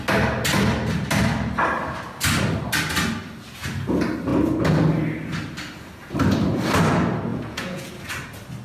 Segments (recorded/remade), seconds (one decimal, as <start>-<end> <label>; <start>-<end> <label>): 0.0-7.3 recorded; 7.3-7.9 remade; 7.9-8.6 recorded